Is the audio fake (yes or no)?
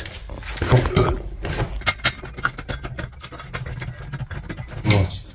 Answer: no